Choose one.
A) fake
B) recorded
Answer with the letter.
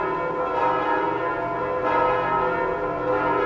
B